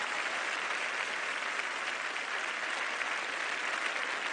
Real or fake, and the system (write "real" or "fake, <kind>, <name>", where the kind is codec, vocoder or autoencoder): real